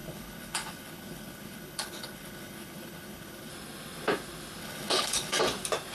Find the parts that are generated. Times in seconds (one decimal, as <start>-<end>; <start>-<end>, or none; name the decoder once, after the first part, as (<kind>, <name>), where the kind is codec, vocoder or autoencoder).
0.0-3.5 (codec, HILCodec); 4.6-5.4